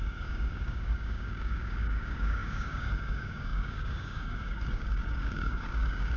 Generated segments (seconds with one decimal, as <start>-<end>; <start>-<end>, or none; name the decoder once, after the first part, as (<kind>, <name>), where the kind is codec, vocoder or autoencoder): 0.0-6.2 (codec, DAC)